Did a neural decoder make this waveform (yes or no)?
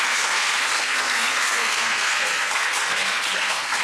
yes